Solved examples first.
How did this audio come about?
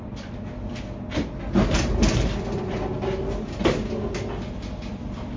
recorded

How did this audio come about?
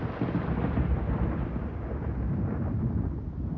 recorded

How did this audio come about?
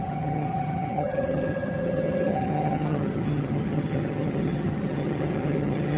remade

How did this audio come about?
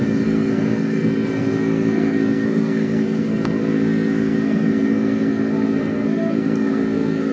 remade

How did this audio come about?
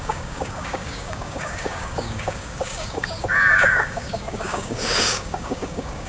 remade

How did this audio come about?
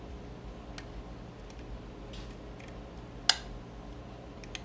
recorded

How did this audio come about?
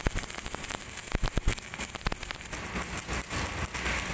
recorded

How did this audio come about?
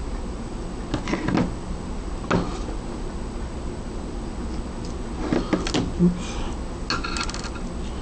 recorded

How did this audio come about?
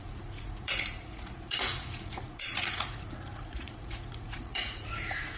remade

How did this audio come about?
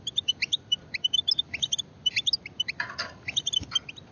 recorded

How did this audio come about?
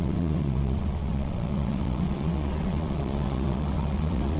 remade